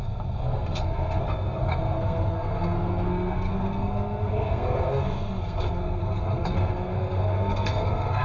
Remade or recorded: remade